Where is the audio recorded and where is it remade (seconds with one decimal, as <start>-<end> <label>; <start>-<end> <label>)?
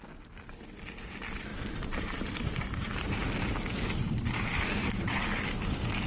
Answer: 0.0-1.5 recorded; 1.5-5.2 remade; 5.2-6.1 recorded